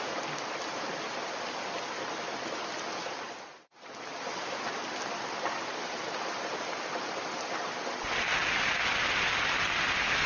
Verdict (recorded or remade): recorded